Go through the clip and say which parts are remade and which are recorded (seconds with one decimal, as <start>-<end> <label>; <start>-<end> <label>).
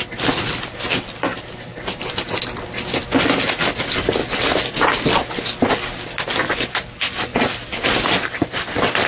0.0-1.3 recorded; 1.3-2.4 remade; 2.4-9.1 recorded